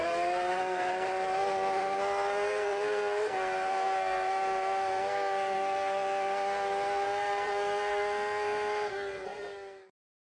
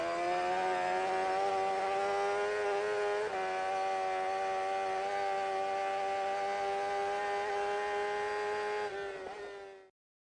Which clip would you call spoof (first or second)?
first